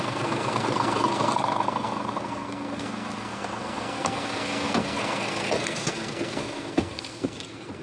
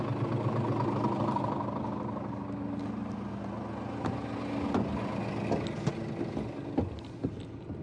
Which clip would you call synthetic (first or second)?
first